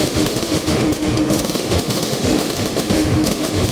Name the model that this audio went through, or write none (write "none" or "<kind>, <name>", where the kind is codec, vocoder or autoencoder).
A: autoencoder, DAC-VAE